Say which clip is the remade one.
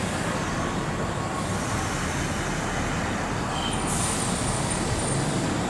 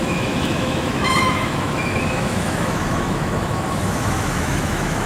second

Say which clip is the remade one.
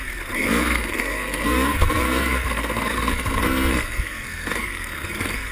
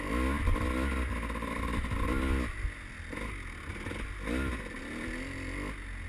first